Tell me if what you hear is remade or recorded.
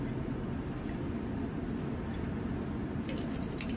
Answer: recorded